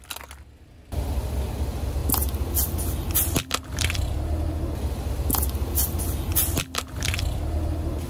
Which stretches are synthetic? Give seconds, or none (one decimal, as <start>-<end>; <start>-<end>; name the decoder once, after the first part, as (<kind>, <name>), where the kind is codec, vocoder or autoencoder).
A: 6.3-7.4 (vocoder, BigVGAN v2)